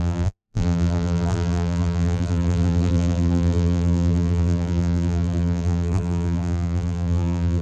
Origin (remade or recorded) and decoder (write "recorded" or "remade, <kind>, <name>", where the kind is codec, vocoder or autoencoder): remade, vocoder, BigVGAN v2